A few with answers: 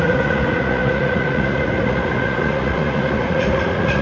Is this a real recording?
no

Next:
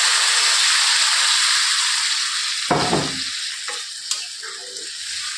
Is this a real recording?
yes